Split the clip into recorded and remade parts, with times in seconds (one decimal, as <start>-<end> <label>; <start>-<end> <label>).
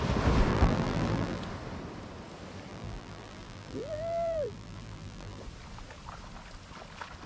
0.0-0.5 recorded; 0.5-1.4 remade; 1.4-2.7 recorded; 2.7-5.4 remade; 5.4-7.3 recorded